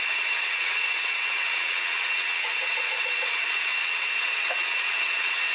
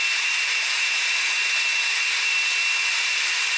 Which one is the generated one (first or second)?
first